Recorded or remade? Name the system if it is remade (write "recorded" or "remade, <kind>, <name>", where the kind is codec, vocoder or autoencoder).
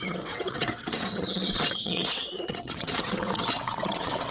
remade, vocoder, WaveNeXt